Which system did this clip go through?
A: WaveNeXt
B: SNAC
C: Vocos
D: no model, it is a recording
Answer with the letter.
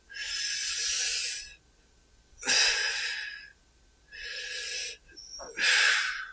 D